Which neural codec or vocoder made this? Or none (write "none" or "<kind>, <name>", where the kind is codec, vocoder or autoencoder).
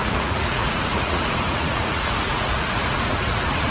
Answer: vocoder, Vocos